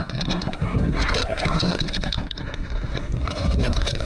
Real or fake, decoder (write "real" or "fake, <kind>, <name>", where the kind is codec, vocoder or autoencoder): fake, codec, SNAC